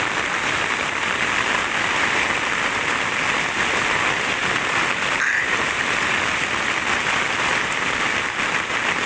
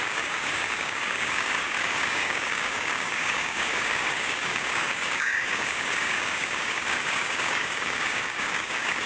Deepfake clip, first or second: second